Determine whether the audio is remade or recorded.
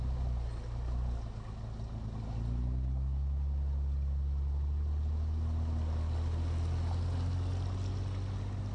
recorded